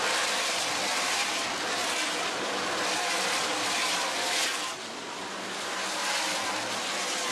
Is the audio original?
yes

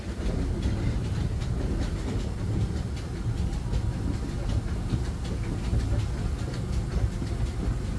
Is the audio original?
yes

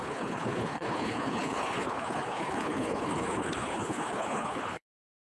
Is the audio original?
no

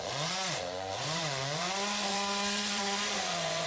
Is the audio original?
no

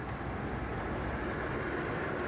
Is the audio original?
yes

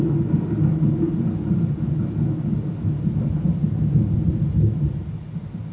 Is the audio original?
yes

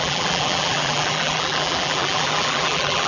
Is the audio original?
no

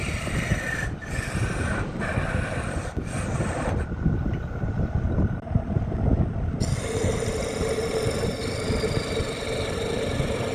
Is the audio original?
yes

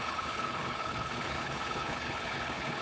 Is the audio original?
no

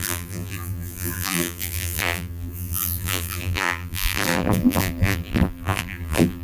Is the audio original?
no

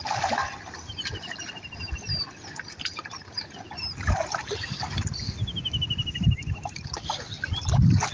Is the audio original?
yes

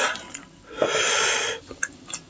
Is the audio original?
yes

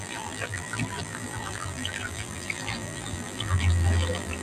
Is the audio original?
no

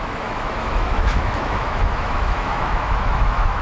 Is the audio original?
no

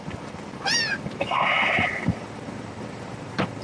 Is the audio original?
no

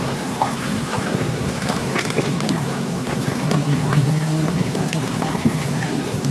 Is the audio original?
no